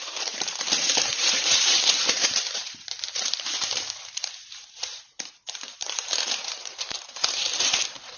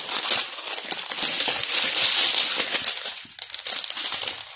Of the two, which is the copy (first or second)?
first